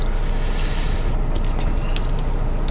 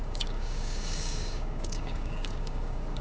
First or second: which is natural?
first